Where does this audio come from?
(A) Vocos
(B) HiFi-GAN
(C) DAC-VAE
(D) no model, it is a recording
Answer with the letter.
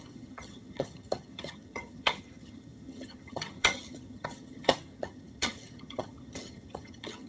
B